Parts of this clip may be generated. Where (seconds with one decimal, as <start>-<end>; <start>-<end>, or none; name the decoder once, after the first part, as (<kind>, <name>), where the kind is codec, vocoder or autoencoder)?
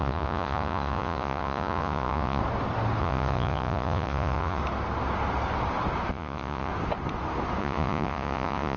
0.0-2.4 (vocoder, Vocos); 3.0-4.6; 6.1-6.7; 7.6-8.8